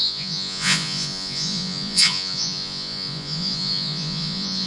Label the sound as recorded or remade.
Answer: remade